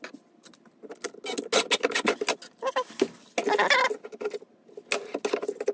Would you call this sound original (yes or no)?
yes